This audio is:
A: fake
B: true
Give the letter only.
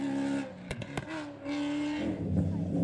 B